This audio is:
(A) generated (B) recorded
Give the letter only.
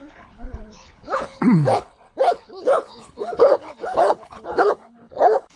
A